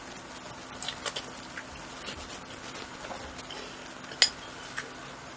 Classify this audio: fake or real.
real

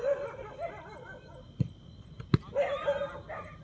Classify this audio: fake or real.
real